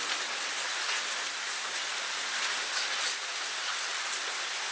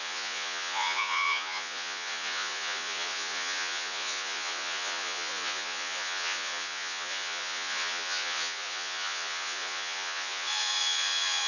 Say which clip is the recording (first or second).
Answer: first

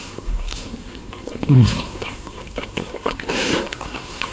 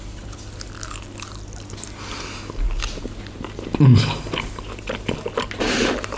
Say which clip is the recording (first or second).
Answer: second